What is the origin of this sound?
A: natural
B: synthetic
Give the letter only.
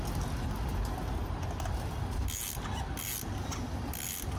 A